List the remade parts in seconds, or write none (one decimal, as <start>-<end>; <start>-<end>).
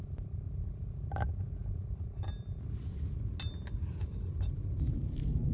3.8-4.9